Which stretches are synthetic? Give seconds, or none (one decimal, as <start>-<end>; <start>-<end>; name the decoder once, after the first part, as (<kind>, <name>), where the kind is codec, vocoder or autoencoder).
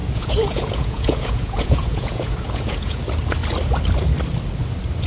0.0-3.0 (vocoder, Vocos)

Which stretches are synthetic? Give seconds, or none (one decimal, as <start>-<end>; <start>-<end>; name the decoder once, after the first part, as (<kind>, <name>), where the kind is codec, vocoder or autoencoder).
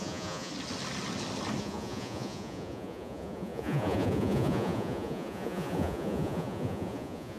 0.0-0.5 (vocoder, Vocos); 1.6-7.4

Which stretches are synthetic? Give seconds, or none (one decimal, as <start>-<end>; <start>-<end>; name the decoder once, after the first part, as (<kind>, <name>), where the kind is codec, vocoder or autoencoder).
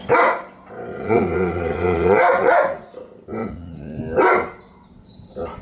0.9-2.9 (vocoder, Vocos); 3.4-4.0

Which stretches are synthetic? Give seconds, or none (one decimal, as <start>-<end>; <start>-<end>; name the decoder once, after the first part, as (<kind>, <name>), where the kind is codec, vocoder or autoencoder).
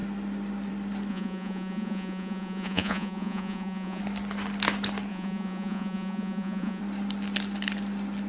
1.1-4.0 (vocoder, Vocos); 5.1-6.8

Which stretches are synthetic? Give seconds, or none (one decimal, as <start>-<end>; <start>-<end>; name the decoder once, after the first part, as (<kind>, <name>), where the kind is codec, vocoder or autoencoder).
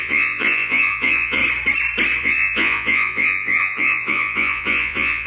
0.0-1.4 (vocoder, Vocos); 2.2-5.3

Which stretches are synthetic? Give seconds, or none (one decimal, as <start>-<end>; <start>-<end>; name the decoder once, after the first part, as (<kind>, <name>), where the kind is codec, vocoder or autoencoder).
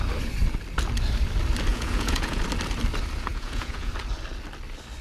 1.7-2.4 (vocoder, Vocos); 3.3-3.9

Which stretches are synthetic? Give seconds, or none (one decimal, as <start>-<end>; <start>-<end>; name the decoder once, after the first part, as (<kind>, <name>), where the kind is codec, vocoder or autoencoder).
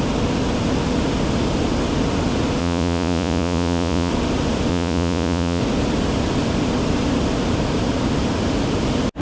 2.6-4.1 (vocoder, Vocos); 4.7-5.6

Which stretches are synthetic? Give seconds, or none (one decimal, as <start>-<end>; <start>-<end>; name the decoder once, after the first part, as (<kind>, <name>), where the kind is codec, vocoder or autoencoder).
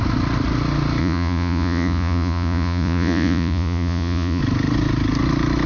1.0-4.4 (vocoder, Vocos)